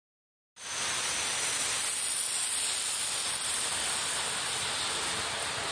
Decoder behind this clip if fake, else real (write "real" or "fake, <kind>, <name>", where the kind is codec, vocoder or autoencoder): real